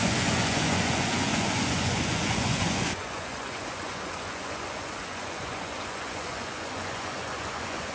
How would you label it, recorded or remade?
remade